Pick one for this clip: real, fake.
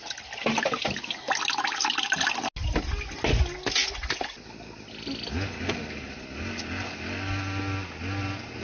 real